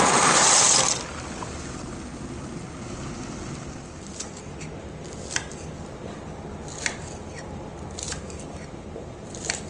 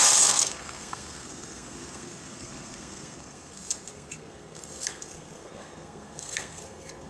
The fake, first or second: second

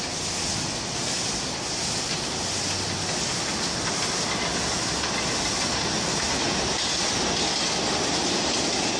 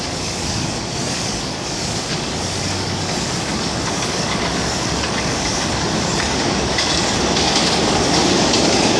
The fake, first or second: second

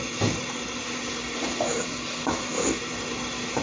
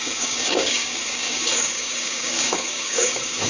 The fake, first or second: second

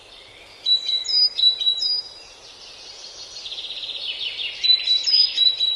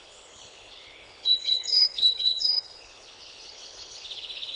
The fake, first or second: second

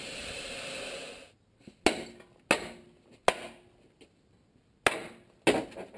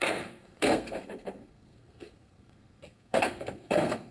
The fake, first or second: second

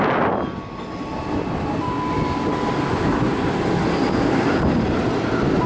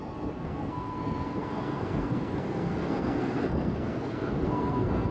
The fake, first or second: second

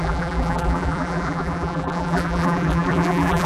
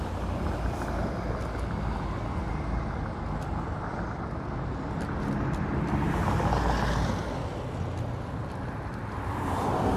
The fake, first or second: first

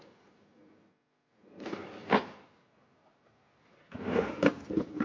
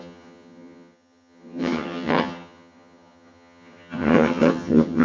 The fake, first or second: second